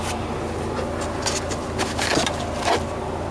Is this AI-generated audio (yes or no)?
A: no